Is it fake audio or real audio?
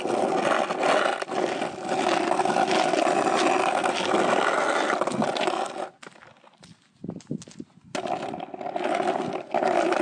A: real